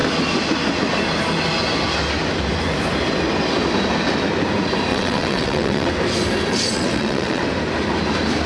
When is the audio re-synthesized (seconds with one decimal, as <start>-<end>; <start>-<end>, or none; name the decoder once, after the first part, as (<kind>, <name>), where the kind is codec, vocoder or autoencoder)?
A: 4.9-5.9 (vocoder, WaveNeXt); 6.5-7.4